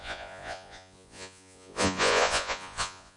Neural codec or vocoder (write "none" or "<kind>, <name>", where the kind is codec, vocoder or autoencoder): vocoder, Vocos